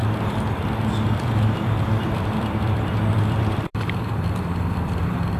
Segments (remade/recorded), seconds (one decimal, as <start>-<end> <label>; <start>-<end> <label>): 0.0-1.1 recorded; 1.1-5.4 remade